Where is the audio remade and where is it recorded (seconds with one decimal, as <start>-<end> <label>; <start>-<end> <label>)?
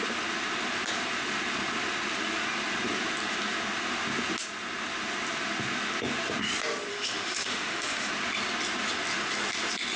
0.0-6.9 recorded; 6.9-8.1 remade; 8.1-10.0 recorded